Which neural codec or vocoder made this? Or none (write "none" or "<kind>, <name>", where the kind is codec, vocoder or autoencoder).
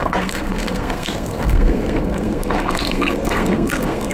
codec, SNAC